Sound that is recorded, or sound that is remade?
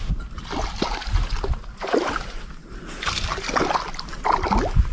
recorded